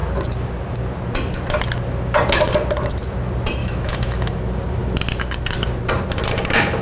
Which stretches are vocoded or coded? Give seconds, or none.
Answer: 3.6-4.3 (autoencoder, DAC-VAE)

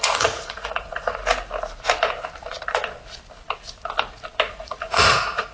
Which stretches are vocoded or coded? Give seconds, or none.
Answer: 0.0-1.2 (vocoder, Vocos); 4.5-5.5

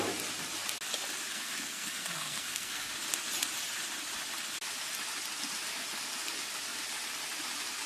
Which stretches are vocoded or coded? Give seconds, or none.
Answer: 1.3-2.9 (codec, SNAC)